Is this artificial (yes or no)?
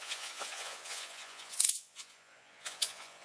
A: yes